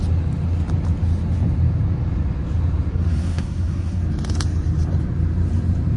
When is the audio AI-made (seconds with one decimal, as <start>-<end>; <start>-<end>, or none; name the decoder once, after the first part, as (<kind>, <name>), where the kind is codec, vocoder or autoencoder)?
2.9-4.0 (codec, SNAC)